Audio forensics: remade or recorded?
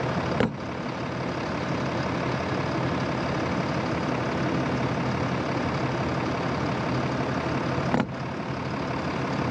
recorded